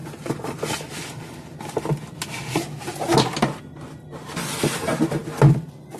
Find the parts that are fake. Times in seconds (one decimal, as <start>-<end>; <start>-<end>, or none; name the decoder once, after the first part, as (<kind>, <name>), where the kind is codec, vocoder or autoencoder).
none